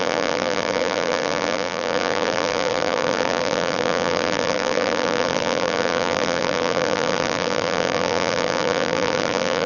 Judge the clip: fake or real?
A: fake